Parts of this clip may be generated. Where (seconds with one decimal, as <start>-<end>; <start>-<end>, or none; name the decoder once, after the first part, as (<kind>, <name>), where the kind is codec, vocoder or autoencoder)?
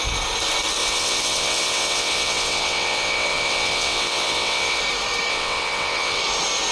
0.8-4.8 (vocoder, WaveNeXt); 5.3-6.2